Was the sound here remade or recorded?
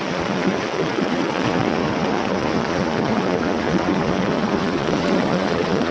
remade